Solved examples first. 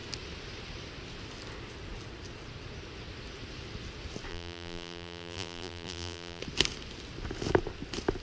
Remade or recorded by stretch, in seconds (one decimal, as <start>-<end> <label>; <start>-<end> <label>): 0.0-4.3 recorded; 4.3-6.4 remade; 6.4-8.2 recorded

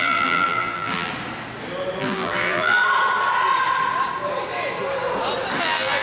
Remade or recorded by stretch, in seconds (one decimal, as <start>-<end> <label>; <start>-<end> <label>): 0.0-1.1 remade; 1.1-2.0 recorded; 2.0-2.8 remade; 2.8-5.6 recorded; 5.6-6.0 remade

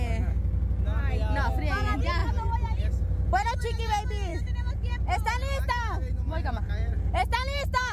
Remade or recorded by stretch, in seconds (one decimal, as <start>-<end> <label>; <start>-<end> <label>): 0.0-2.2 recorded; 2.2-2.8 remade; 2.8-4.3 recorded; 4.3-7.9 remade

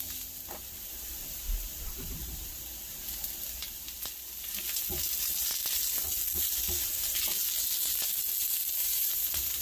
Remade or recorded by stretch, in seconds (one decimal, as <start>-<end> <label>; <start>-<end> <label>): 0.0-8.8 recorded; 8.8-9.6 remade

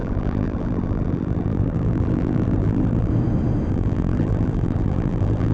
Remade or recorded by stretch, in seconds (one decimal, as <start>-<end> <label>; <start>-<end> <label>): 0.0-3.1 remade; 3.1-3.7 recorded; 3.7-5.5 remade

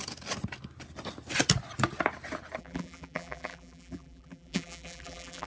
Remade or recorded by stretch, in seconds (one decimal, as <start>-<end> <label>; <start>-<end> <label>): 0.0-2.6 recorded; 2.6-5.5 remade